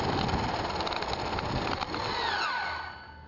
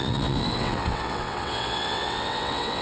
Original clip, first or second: first